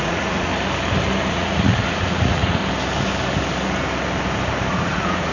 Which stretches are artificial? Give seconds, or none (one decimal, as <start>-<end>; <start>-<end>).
0.0-0.5; 1.3-2.6; 4.7-5.3